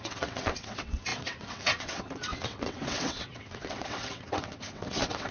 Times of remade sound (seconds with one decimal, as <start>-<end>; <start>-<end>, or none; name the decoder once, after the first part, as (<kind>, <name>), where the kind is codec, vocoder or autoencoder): 0.0-5.3 (vocoder, WaveNeXt)

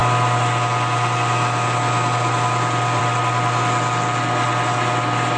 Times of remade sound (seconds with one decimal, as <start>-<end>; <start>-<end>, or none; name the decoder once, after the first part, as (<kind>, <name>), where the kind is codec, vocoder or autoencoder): none

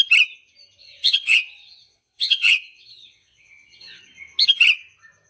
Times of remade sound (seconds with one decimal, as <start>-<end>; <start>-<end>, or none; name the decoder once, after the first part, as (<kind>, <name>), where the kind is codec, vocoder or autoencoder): 0.8-4.0 (vocoder, WaveNeXt)